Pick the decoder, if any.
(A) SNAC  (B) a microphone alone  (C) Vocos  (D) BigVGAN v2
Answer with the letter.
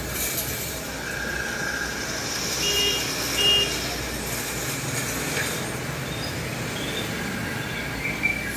B